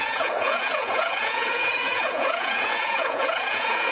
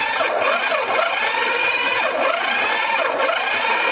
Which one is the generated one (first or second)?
first